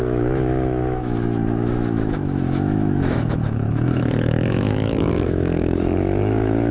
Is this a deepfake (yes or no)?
yes